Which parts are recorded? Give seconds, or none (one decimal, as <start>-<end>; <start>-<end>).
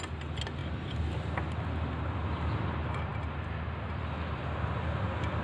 0.0-5.4